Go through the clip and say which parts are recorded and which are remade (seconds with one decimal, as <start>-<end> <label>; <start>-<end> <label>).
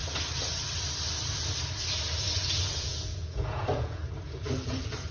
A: 0.0-2.8 recorded; 2.8-4.0 remade; 4.0-4.6 recorded; 4.6-5.1 remade